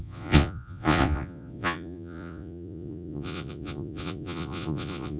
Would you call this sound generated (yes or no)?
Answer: yes